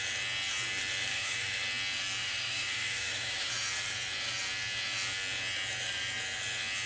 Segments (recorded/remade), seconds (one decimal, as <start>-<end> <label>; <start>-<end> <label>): 0.0-1.1 recorded; 1.1-1.6 remade; 1.6-2.2 recorded; 2.2-3.5 remade; 3.5-6.9 recorded